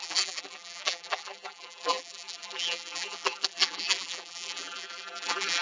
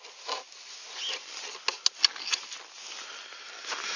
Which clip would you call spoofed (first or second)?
first